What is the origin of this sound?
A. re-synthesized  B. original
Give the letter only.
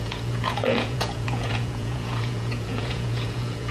A